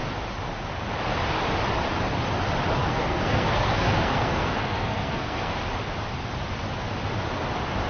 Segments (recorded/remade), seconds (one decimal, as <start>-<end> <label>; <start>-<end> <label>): 0.0-2.8 recorded; 2.8-5.5 remade; 5.5-7.9 recorded